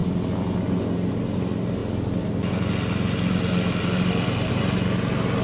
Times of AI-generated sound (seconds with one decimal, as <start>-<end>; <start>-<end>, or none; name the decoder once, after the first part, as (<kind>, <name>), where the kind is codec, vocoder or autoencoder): none